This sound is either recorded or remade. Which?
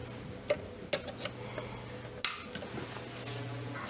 recorded